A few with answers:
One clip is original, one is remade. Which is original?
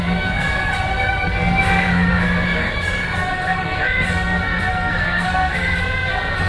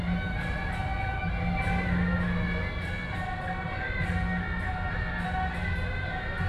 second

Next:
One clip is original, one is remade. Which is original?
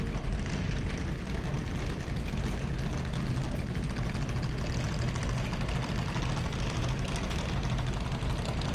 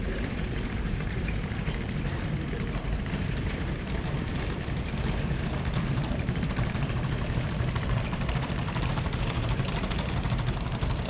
first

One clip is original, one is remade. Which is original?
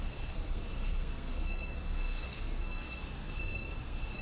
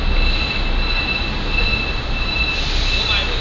second